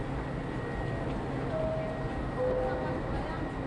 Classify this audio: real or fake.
real